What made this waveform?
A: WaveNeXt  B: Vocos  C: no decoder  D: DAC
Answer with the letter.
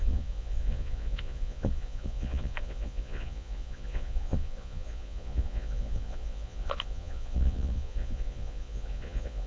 B